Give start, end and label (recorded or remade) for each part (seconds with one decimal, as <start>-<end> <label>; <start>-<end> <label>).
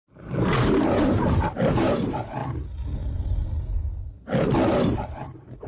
0.0-2.4 remade; 2.4-4.7 recorded; 4.7-5.7 remade